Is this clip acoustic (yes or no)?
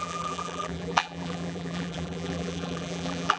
no